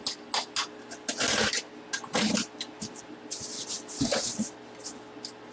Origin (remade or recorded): recorded